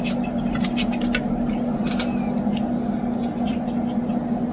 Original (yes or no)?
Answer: yes